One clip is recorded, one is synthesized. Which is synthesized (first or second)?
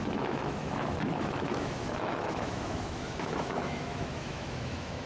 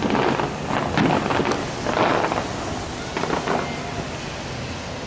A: first